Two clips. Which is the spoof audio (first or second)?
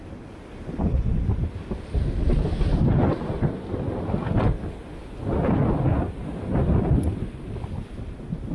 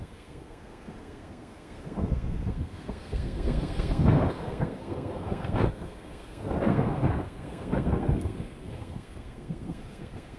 second